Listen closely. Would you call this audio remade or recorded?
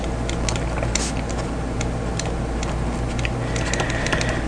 recorded